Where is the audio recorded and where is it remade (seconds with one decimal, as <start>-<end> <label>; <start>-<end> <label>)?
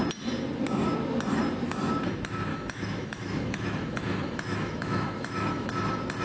0.0-2.5 recorded; 2.5-5.7 remade; 5.7-6.2 recorded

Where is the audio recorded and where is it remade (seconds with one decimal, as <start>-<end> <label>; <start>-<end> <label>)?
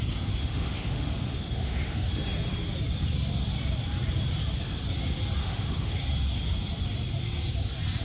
0.0-0.4 recorded; 0.4-2.1 remade; 2.1-5.4 recorded; 5.4-6.0 remade; 6.0-8.0 recorded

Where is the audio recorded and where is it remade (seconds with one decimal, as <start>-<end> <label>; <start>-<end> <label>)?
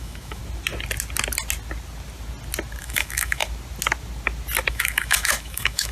0.0-0.4 remade; 0.4-2.8 recorded; 2.8-3.4 remade; 3.4-4.7 recorded; 4.7-5.9 remade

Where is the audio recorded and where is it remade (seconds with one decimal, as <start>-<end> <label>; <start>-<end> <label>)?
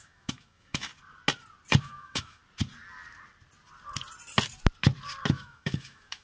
0.0-0.9 remade; 0.9-1.8 recorded; 1.8-2.4 remade; 2.4-5.3 recorded; 5.3-6.2 remade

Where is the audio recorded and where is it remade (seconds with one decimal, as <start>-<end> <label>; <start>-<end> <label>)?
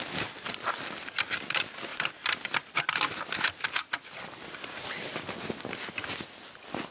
0.0-6.9 recorded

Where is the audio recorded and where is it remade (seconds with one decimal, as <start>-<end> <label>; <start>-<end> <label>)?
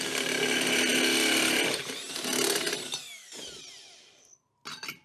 0.0-5.0 recorded